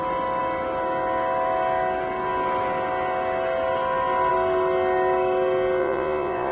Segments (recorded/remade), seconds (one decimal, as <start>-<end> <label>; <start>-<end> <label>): 0.0-5.8 recorded; 5.8-6.5 remade